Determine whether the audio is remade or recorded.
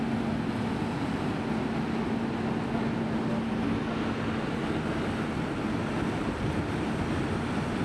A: recorded